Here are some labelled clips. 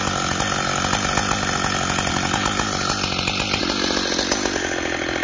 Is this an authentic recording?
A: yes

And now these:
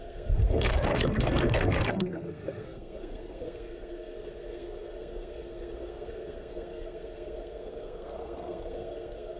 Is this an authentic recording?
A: no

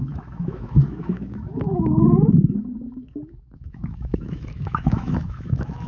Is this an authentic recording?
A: no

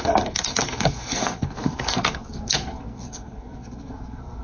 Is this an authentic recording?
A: no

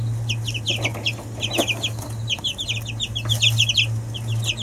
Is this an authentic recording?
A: yes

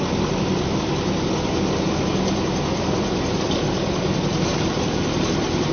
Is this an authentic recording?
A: yes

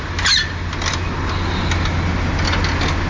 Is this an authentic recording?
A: yes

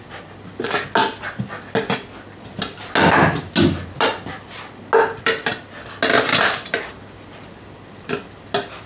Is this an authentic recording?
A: yes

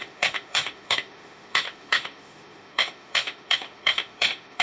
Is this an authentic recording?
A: no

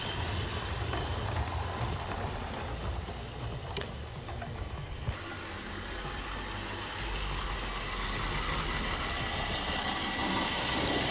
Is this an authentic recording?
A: yes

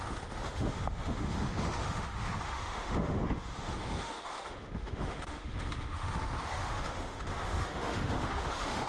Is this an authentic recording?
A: no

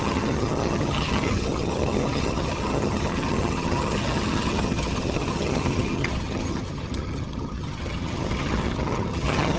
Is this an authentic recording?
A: no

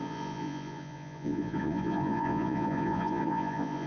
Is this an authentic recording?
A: no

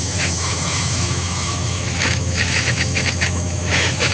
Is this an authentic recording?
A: no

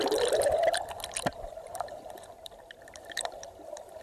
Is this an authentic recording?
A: no